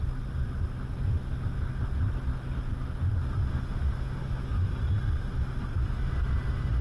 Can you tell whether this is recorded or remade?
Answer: recorded